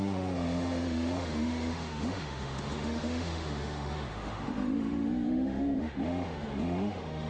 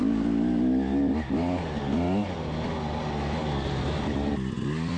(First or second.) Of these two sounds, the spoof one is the first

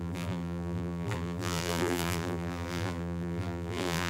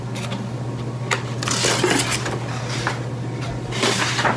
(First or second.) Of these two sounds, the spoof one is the first